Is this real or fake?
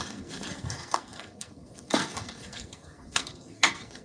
fake